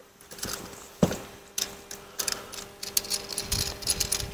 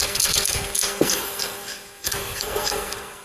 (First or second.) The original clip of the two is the first